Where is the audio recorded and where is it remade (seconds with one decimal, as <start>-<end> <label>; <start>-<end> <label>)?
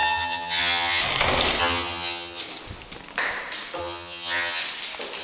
0.0-1.0 remade; 1.0-1.6 recorded; 1.6-2.4 remade; 2.4-3.8 recorded; 3.8-4.6 remade; 4.6-5.2 recorded